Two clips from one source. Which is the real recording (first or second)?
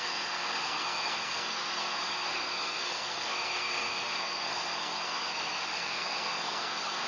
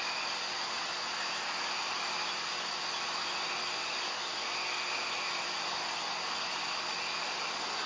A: second